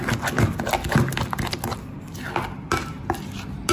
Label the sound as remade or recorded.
recorded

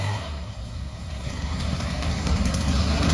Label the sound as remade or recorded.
remade